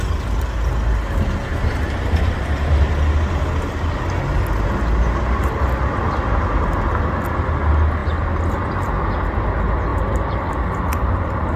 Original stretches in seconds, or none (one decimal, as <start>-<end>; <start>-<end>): 0.0-1.5; 2.9-9.9; 10.5-11.6